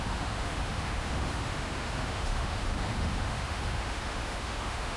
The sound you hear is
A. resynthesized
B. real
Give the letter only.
A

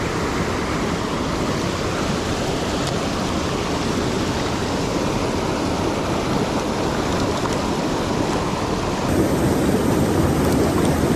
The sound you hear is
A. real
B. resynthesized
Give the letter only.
A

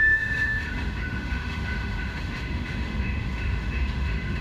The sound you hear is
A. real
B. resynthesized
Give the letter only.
B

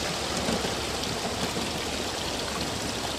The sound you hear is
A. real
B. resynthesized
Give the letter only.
A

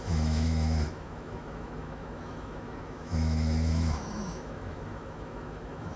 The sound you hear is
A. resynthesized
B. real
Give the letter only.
A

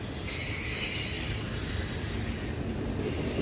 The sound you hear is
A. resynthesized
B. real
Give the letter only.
B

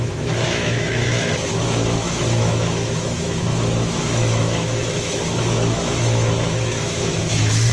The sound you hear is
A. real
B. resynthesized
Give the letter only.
B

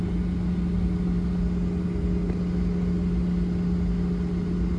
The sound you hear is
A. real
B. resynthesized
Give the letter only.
A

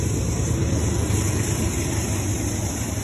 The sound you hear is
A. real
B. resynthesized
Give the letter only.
A